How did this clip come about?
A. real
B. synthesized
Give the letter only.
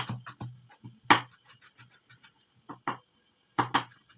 A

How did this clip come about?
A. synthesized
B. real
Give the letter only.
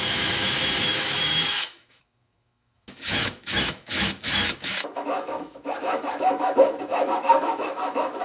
A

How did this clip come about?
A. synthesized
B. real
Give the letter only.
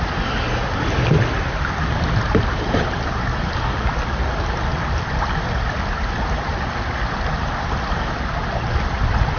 B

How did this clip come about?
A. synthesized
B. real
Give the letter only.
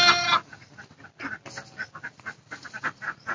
B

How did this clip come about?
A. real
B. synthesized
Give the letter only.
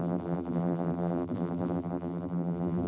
B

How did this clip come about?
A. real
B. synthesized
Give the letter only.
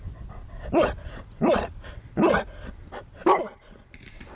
A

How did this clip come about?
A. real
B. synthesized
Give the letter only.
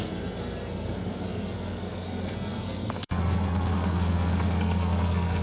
B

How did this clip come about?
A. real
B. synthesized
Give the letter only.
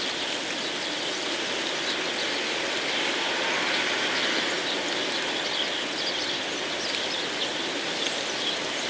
A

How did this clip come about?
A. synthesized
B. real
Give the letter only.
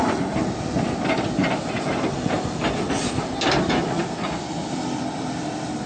A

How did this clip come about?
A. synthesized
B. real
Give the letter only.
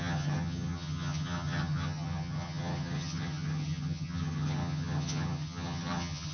A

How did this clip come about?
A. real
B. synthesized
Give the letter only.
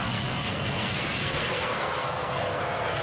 B